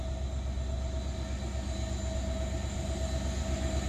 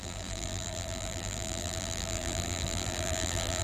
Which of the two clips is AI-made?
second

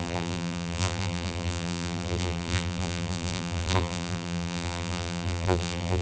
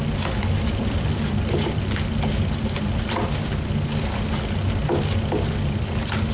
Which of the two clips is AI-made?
first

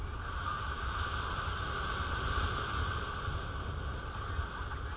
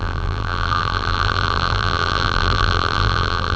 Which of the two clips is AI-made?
second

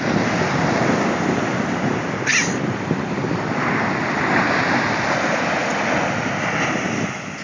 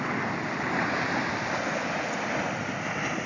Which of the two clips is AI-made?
second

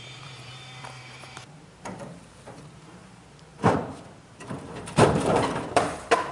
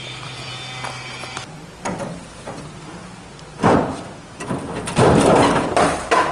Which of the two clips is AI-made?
first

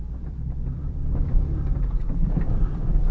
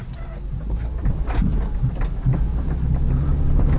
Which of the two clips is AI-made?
first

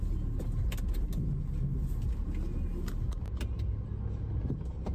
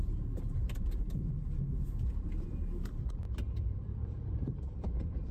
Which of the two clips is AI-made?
second